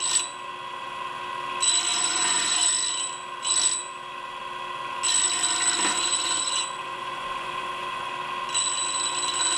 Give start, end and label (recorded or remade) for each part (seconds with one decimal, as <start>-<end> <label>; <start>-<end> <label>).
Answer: 0.0-1.9 recorded; 1.9-2.7 remade; 2.7-5.9 recorded; 5.9-8.1 remade; 8.1-9.6 recorded